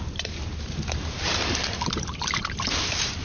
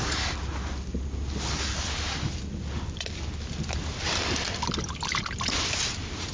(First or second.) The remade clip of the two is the first